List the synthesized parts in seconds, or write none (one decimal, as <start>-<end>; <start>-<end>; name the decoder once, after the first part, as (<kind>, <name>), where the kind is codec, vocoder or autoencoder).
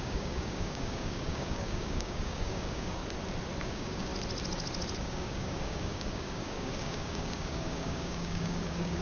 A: 0.0-3.0 (codec, DAC); 3.6-4.1; 5.0-9.0